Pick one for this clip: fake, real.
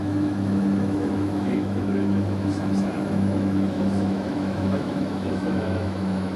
fake